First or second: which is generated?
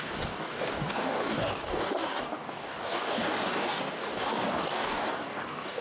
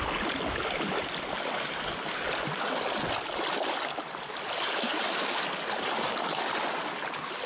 first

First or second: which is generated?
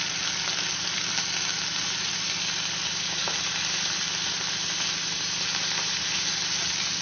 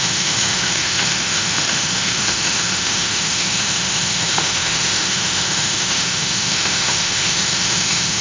second